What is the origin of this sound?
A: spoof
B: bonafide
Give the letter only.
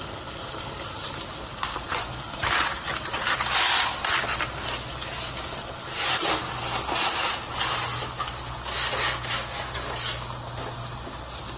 B